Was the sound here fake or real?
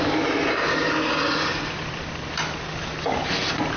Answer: real